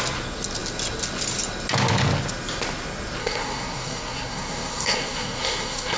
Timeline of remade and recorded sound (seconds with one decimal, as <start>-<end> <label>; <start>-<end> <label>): 0.0-3.2 recorded; 3.2-6.0 remade